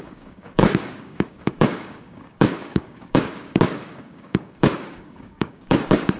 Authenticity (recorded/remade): remade